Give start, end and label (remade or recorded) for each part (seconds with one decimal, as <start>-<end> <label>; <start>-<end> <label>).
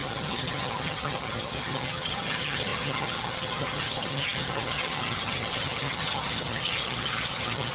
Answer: 0.0-7.7 remade